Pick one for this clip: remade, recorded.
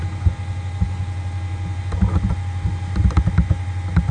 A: recorded